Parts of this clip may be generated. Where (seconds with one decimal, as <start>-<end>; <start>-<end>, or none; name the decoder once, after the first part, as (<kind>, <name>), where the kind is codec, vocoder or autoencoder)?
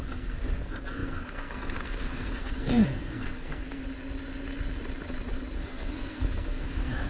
0.0-3.8 (codec, SNAC); 5.6-7.1